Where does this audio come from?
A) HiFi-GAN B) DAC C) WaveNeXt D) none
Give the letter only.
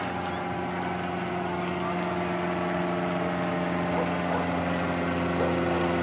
D